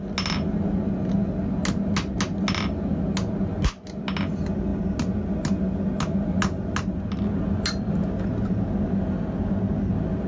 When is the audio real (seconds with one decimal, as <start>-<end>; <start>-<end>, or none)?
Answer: 0.0-10.3